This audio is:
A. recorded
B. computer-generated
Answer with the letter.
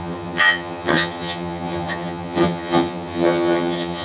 B